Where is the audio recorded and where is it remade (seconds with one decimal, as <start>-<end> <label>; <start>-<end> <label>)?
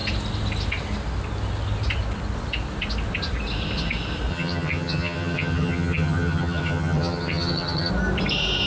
0.0-4.3 recorded; 4.3-7.9 remade; 7.9-8.7 recorded